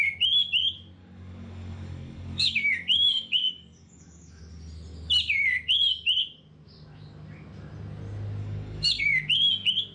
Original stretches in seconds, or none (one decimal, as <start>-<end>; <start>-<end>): 0.0-1.0; 4.4-8.4; 9.0-9.9

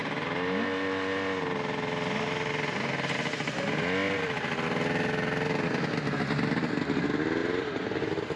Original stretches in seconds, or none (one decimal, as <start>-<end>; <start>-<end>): 0.0-8.4

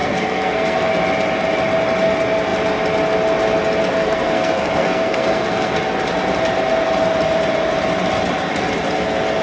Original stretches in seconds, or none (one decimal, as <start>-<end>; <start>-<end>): 0.9-4.0; 5.8-9.4

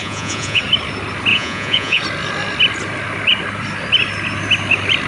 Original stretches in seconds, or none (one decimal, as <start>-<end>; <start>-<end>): 0.6-1.3; 2.0-5.1

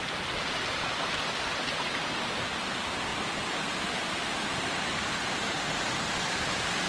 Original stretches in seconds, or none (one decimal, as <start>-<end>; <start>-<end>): 0.0-6.9